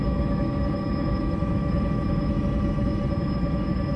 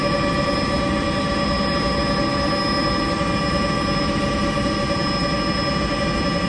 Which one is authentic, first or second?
second